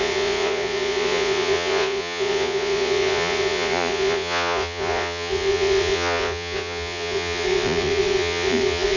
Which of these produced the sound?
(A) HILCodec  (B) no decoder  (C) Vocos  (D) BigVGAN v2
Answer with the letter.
C